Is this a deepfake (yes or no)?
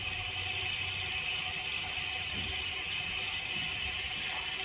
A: no